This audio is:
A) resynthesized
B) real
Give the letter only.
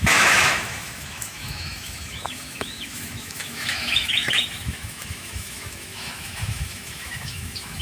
A